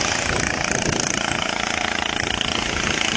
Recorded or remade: recorded